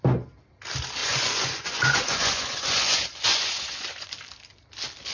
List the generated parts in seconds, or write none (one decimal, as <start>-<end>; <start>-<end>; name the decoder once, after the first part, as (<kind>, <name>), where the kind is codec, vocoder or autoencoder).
1.0-4.1 (vocoder, Vocos)